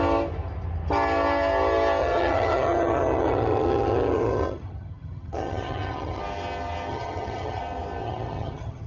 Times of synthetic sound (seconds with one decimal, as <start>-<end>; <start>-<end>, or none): 2.0-6.2; 6.9-7.6; 8.0-8.9